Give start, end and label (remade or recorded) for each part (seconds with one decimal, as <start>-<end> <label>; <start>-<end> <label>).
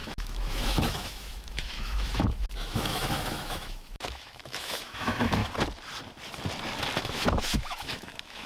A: 0.0-5.4 remade; 5.4-7.0 recorded; 7.0-8.5 remade